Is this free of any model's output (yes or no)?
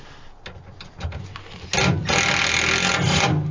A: yes